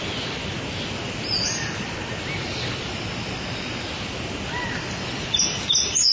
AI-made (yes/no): no